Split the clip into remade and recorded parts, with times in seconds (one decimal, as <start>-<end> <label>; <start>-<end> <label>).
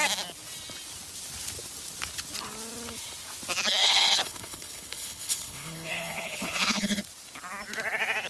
0.0-3.8 recorded; 3.8-7.0 remade; 7.0-8.3 recorded